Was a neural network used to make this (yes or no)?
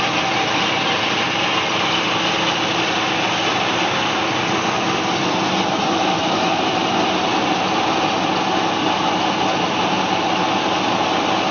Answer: no